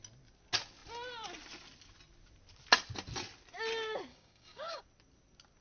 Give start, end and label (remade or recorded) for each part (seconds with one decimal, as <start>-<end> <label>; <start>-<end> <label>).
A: 0.0-4.1 recorded; 4.1-4.8 remade; 4.8-5.6 recorded